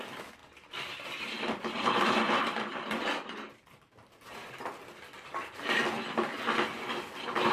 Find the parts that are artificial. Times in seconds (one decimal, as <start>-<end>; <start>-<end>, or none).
0.4-4.5

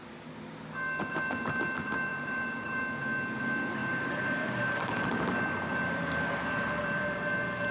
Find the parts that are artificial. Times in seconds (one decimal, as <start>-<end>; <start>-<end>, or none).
2.1-2.8

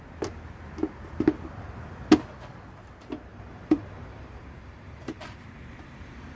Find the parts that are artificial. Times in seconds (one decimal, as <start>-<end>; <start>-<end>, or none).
3.3-6.4